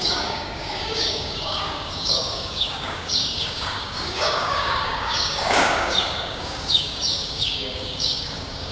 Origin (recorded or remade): remade